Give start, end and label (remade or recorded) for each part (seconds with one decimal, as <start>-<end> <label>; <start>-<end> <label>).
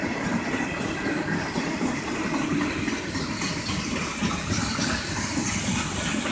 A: 0.0-1.6 recorded; 1.6-2.5 remade; 2.5-5.7 recorded; 5.7-6.3 remade